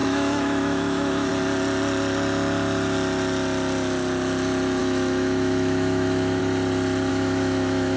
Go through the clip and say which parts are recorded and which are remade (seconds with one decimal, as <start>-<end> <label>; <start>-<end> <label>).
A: 0.0-1.3 remade; 1.3-4.8 recorded; 4.8-6.4 remade; 6.4-7.1 recorded; 7.1-8.0 remade